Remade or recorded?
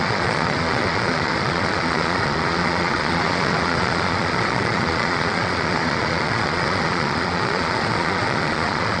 remade